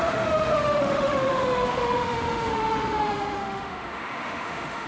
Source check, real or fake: fake